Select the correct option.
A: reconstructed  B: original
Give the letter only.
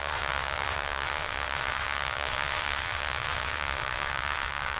A